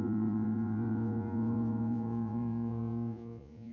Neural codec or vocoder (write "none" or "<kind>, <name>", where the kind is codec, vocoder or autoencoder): vocoder, Vocos